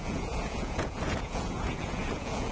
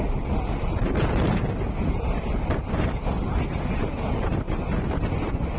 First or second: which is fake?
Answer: first